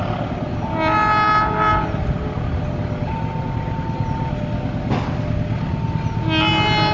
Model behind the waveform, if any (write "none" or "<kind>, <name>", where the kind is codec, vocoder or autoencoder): none